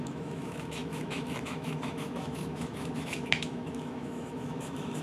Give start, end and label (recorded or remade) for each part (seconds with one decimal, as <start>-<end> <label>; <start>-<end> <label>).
0.0-5.0 remade